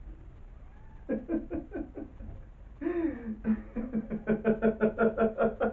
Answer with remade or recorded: recorded